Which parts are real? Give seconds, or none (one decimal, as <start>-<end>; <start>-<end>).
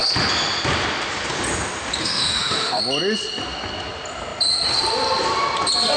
0.0-2.0; 2.8-6.0